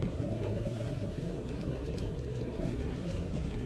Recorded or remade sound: remade